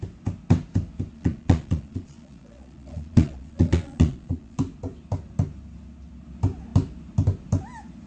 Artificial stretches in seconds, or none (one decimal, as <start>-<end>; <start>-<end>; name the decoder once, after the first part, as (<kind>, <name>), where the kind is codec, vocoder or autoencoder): 1.1-4.6 (vocoder, Vocos)